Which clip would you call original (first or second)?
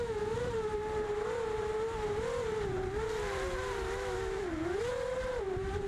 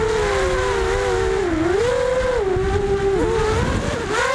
second